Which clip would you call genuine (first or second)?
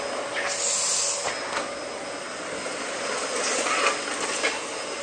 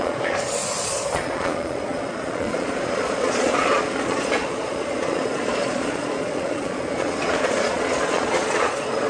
first